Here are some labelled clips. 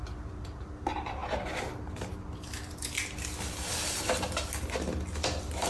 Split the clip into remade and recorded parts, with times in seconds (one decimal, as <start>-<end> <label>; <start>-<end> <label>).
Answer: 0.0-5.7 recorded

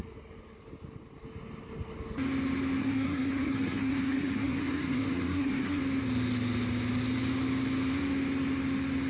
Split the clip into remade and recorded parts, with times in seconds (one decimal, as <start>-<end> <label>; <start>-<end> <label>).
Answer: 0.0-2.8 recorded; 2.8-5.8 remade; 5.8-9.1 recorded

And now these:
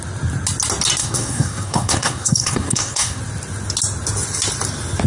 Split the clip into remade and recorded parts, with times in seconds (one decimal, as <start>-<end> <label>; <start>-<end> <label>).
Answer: 0.0-1.0 recorded; 1.0-3.2 remade; 3.2-5.1 recorded

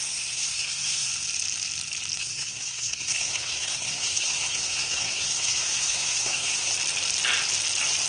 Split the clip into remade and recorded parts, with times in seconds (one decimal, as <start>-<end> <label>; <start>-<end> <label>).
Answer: 0.0-1.1 remade; 1.1-2.2 recorded; 2.2-6.7 remade; 6.7-8.1 recorded

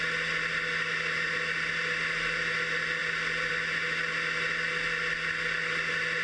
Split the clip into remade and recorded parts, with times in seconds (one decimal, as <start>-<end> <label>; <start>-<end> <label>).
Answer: 0.0-6.2 recorded